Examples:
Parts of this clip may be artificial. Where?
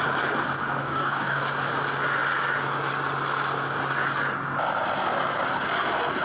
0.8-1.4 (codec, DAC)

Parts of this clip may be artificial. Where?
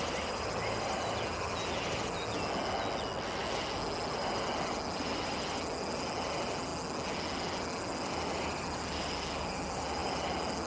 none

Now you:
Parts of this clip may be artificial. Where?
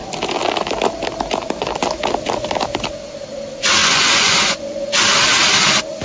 3.8-5.0 (vocoder, Vocos)